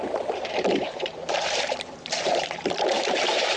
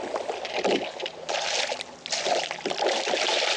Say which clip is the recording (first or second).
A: second